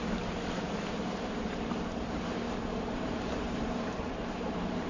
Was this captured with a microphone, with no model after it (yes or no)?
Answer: no